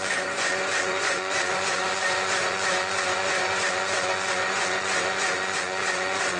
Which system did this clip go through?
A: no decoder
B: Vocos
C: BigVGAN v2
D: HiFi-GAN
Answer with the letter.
B